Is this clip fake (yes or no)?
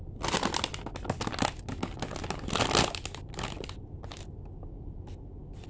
no